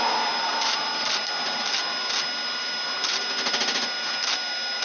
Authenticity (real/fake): real